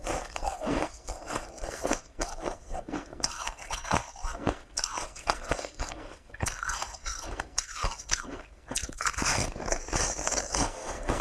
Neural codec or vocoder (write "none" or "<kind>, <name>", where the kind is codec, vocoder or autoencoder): codec, SNAC